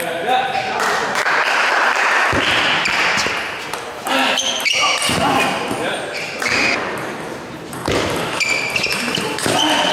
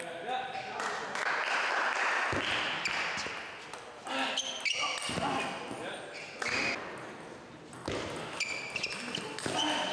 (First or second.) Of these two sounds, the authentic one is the second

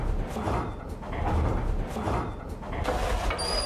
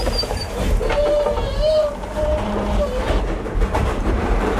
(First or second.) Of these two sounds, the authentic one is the first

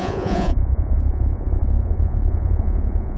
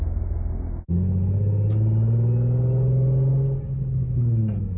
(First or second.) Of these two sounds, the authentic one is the second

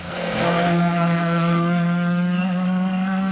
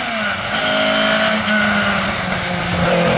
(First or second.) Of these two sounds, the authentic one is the second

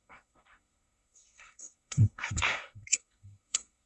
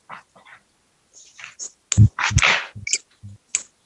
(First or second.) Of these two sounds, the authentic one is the second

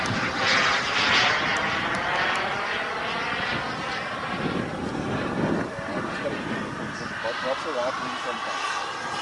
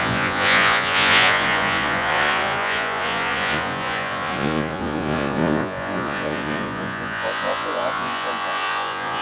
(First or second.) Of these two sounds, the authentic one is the first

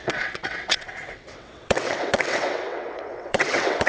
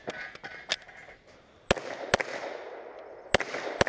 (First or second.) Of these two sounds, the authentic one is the second